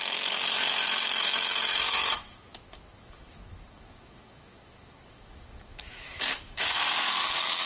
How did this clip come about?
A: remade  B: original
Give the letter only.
A